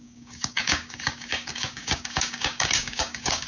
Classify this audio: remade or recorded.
remade